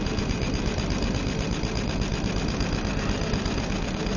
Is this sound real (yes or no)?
yes